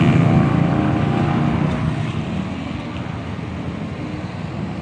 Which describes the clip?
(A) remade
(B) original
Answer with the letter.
B